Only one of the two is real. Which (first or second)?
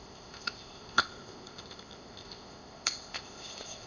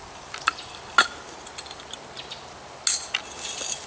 second